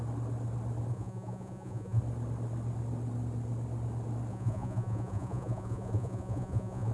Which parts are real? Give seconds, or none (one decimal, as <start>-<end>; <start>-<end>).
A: 0.0-0.9; 2.0-4.3